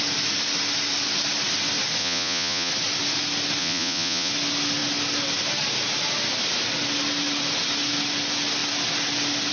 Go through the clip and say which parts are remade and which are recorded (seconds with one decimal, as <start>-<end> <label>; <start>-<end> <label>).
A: 0.0-2.0 recorded; 2.0-2.7 remade; 2.7-3.6 recorded; 3.6-4.3 remade; 4.3-9.5 recorded